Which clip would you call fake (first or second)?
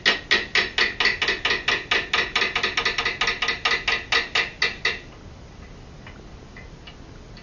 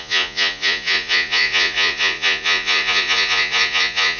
second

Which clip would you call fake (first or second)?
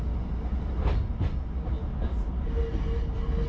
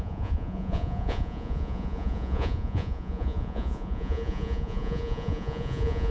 second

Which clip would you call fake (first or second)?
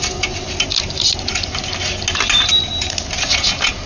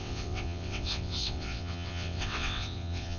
second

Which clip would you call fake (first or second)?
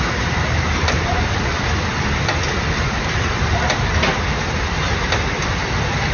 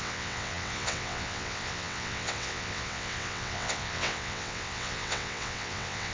second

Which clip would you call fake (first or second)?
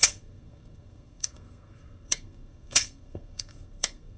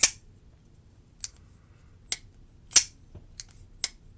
first